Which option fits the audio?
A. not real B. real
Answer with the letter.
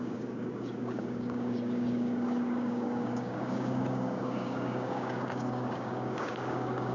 A